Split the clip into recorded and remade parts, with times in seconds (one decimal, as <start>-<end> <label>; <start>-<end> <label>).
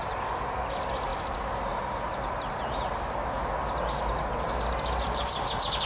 0.0-5.9 recorded